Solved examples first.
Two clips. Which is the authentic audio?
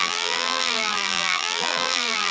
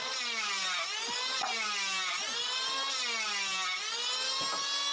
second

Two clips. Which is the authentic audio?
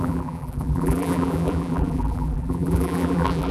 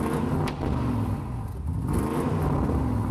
second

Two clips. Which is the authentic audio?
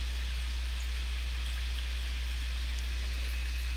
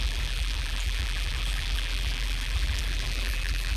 first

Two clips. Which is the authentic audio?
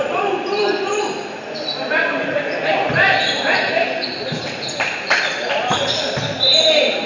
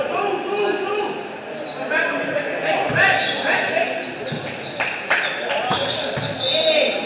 second